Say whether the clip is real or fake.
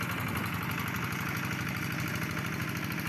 real